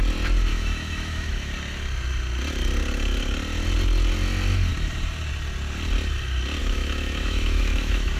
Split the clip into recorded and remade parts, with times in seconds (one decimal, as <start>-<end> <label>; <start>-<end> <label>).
0.0-0.5 recorded; 0.5-1.5 remade; 1.5-6.6 recorded; 6.6-8.2 remade